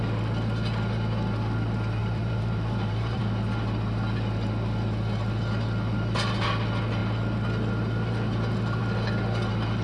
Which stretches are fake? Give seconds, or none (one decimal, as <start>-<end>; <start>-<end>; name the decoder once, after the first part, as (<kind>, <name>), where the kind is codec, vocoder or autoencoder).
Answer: 2.0-3.2 (vocoder, BigVGAN v2)